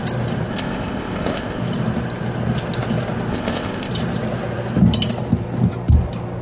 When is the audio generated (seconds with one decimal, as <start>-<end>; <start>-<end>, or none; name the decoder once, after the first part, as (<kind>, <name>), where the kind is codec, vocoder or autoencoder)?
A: 0.5-1.6 (codec, ZipCodec); 3.3-3.9